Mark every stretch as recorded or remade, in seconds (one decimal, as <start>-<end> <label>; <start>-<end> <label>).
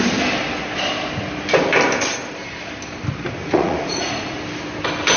0.0-3.4 recorded; 3.4-4.4 remade; 4.4-5.2 recorded